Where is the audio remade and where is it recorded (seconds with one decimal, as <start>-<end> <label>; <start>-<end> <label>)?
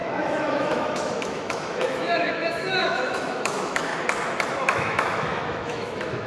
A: 0.0-3.9 remade; 3.9-4.5 recorded; 4.5-6.3 remade